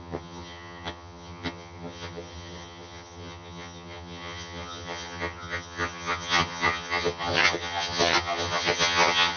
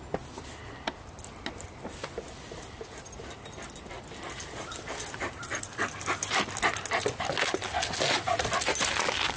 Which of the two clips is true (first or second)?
second